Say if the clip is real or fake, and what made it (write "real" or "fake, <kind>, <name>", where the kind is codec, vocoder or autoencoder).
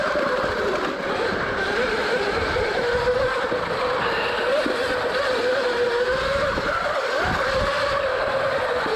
real